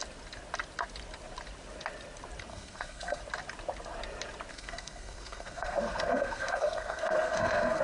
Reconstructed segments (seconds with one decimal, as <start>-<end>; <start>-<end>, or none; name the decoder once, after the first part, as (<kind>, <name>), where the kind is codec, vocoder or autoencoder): 2.5-3.2 (codec, SNAC); 4.5-7.8